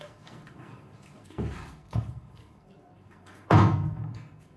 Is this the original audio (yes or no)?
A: no